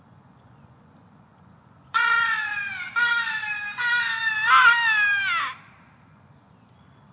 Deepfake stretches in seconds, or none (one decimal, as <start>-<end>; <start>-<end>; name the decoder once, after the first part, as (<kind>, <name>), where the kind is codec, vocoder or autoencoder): 0.0-2.5 (vocoder, Vocos); 6.0-7.1